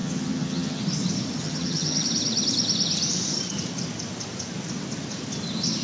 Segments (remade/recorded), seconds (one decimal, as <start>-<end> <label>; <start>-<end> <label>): 0.0-0.8 remade; 0.8-1.4 recorded; 1.4-2.0 remade; 2.0-5.8 recorded